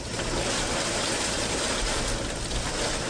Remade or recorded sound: recorded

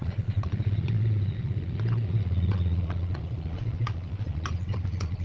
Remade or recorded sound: remade